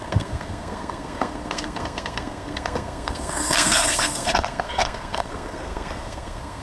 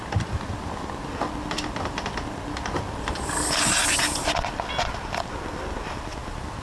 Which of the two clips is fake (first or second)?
first